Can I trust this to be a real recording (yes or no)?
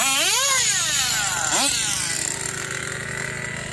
yes